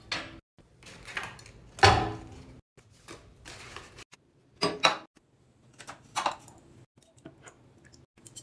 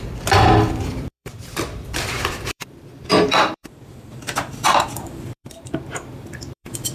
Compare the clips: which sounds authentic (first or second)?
first